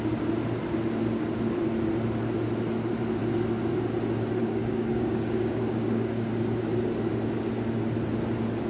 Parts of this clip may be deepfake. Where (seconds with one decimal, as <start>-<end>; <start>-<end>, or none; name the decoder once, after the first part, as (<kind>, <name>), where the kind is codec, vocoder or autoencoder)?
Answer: 4.4-6.3 (codec, DAC)